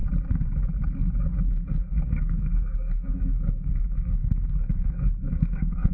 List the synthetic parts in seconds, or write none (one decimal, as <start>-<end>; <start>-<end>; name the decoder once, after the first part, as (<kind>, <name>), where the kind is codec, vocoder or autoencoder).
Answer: 1.5-5.9 (codec, SNAC)